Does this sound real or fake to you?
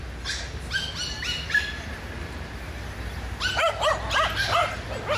real